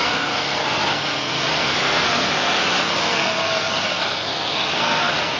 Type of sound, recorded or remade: remade